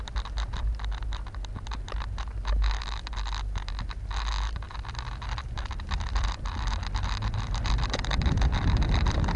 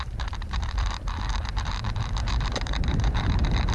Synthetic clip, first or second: second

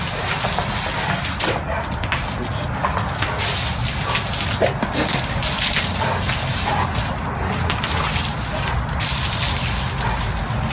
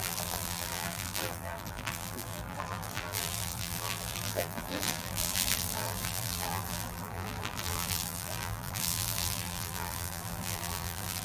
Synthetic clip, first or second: second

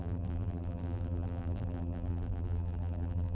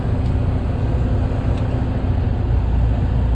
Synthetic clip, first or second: first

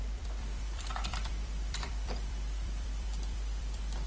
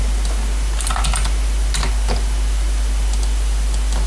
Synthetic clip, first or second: first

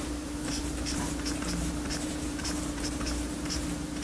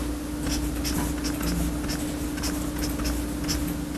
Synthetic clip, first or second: first